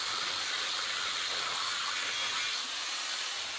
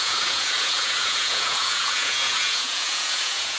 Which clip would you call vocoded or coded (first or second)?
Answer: second